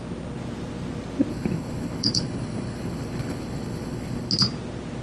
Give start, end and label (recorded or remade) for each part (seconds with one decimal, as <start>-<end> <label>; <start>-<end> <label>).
0.0-1.3 recorded; 1.3-4.3 remade; 4.3-5.0 recorded